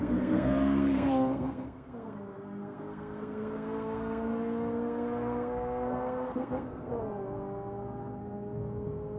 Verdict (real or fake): fake